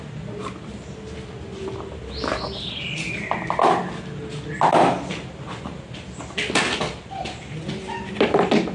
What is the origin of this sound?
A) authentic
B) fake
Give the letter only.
A